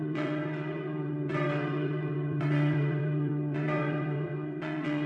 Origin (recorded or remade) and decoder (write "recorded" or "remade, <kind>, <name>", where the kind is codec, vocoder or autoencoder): remade, vocoder, WaveNeXt